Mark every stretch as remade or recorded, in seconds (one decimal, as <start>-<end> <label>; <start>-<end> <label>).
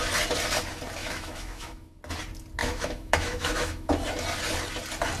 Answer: 0.0-1.0 recorded; 1.0-2.0 remade; 2.0-2.6 recorded; 2.6-3.9 remade; 3.9-5.2 recorded